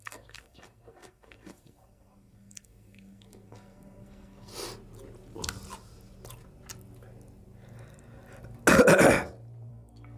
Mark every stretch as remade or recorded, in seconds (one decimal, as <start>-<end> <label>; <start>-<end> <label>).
0.0-4.5 remade; 4.5-9.7 recorded; 9.7-10.2 remade